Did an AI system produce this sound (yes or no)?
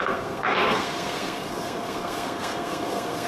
yes